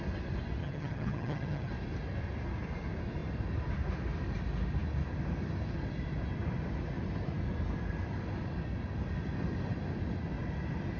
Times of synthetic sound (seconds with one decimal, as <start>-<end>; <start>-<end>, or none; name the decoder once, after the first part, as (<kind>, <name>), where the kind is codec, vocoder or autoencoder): 0.6-1.7 (vocoder, HiFi-GAN)